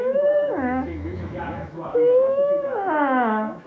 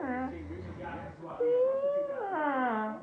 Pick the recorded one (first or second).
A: second